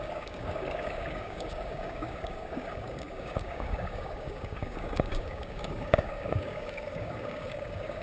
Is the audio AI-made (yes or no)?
yes